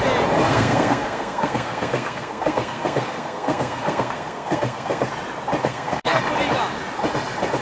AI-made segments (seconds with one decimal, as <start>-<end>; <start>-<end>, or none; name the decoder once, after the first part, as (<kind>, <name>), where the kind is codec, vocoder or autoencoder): 0.5-5.1 (codec, SNAC); 5.6-6.2

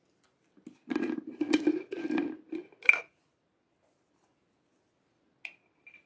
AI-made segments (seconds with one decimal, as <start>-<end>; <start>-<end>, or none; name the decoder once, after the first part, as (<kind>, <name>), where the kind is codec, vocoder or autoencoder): none

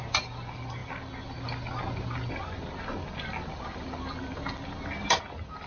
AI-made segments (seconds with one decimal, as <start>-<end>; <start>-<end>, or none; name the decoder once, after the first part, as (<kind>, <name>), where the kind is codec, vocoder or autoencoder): none